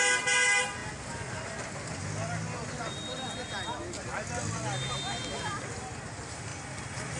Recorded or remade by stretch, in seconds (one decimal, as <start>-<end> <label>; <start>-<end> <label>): 0.0-7.2 recorded